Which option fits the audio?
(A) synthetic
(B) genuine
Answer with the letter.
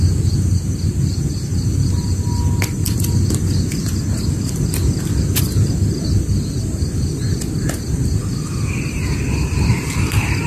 B